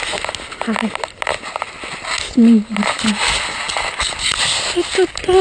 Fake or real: real